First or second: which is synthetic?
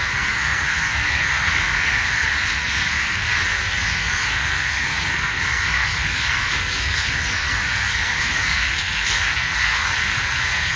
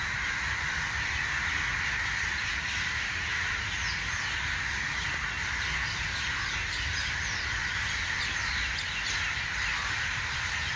first